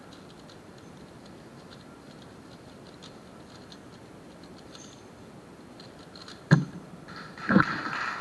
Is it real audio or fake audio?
real